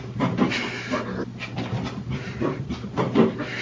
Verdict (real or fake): real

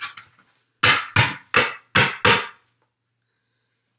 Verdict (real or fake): real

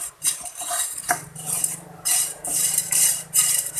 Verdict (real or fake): fake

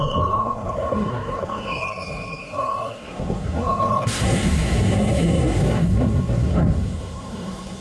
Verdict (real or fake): fake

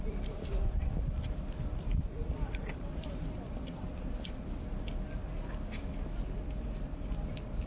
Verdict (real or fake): real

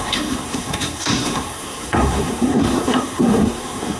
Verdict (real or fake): fake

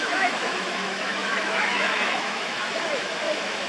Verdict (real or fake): fake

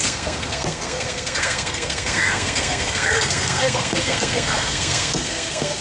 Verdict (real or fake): fake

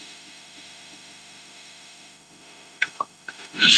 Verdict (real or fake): fake